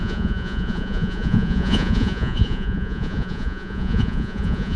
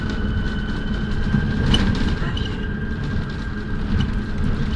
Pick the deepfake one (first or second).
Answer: first